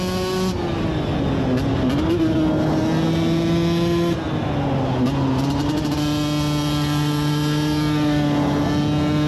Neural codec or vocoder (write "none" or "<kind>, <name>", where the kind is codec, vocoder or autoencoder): none